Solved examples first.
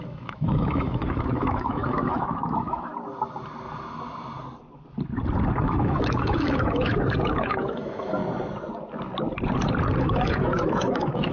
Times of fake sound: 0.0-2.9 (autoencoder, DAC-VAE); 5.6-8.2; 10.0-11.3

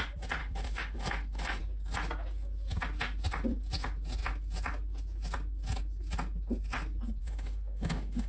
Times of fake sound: 0.4-1.6 (autoencoder, DAC-VAE); 7.2-8.3

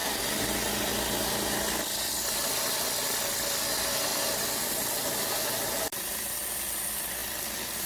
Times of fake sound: none